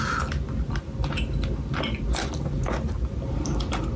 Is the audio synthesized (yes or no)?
no